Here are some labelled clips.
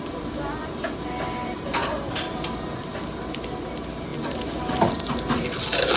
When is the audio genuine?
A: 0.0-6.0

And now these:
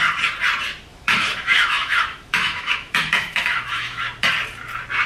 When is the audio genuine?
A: 0.0-0.9; 4.0-5.1

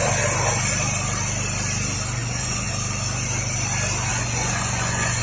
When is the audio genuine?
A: 0.0-2.2; 2.7-4.1

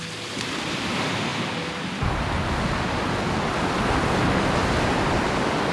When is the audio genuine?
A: 0.0-5.7

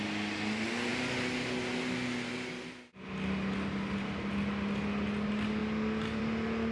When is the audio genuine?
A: 0.0-6.7

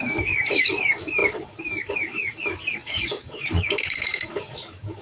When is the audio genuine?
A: none

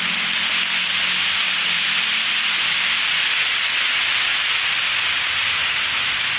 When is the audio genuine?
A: 0.0-6.4